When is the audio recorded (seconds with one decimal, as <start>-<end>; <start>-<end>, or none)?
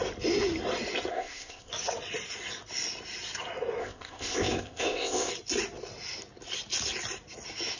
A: 0.0-1.1; 1.7-3.8; 5.3-7.8